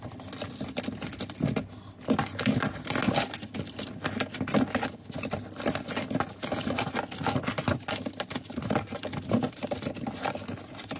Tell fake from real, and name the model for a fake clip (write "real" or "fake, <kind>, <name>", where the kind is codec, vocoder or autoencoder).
real